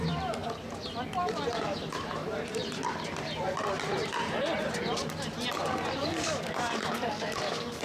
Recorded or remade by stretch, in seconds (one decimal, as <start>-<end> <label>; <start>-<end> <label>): 0.0-6.0 recorded; 6.0-7.8 remade